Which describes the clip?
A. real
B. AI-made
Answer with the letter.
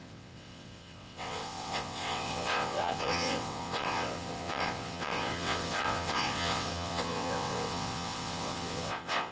B